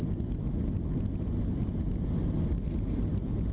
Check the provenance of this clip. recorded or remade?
recorded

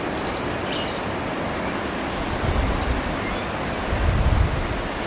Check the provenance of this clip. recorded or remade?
recorded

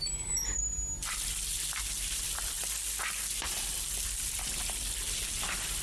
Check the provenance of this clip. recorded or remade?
recorded